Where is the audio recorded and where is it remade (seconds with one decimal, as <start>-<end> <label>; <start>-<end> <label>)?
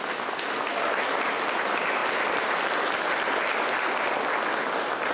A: 0.0-5.1 recorded